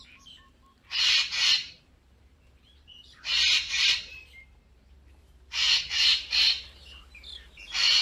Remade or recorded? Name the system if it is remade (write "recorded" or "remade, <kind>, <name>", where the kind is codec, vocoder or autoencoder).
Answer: remade, vocoder, BigVGAN v2